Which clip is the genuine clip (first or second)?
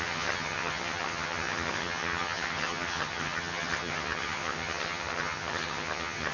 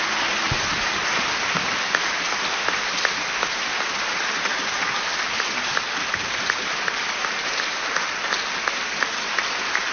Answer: second